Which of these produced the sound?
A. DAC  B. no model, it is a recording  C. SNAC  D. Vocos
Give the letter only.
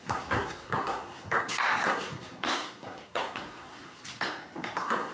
C